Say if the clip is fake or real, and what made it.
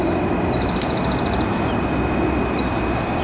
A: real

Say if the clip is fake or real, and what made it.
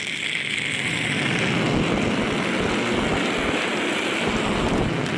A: real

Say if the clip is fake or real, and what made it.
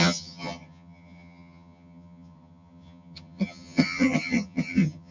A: fake, vocoder, HiFi-GAN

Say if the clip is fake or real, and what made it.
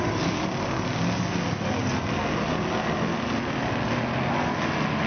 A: real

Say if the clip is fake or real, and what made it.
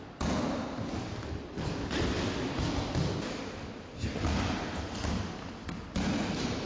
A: real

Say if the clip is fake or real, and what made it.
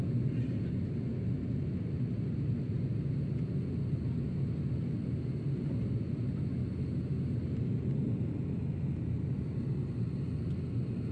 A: real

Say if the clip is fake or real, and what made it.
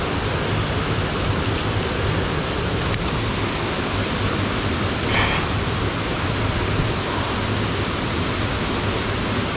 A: real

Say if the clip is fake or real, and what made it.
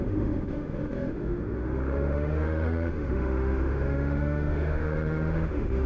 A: fake, autoencoder, DAC-VAE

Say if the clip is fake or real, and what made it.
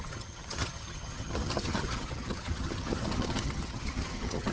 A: fake, vocoder, HiFi-GAN